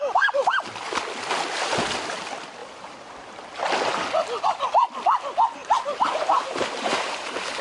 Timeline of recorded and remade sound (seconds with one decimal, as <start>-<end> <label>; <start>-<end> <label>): 0.0-5.6 recorded; 5.6-7.6 remade